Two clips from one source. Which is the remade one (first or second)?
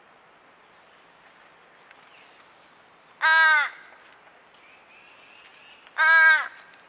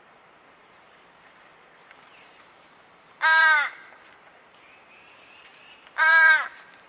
second